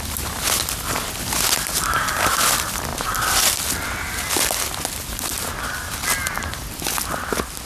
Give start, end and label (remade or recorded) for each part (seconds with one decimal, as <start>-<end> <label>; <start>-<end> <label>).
0.0-7.7 recorded